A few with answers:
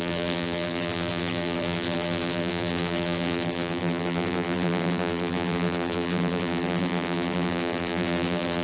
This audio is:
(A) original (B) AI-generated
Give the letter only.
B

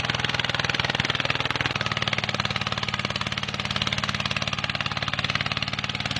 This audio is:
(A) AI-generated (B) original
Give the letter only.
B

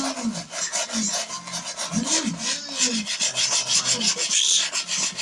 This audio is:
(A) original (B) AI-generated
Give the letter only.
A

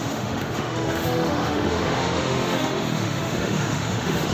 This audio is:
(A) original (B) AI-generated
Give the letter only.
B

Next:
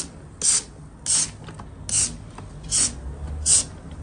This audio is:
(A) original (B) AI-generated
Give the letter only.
A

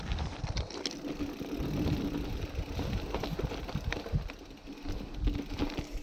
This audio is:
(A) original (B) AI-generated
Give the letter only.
A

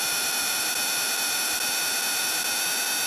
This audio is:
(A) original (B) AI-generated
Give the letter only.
A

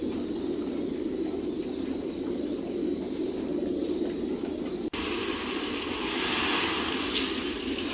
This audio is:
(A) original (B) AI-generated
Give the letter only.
A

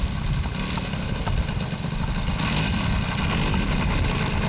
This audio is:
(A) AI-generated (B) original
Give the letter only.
B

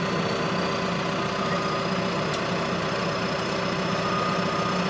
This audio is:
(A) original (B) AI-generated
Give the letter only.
A